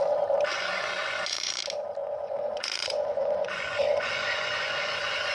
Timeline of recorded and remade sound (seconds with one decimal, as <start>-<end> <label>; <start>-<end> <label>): 0.0-0.5 recorded; 0.5-1.6 remade; 1.6-2.0 recorded; 2.0-5.3 remade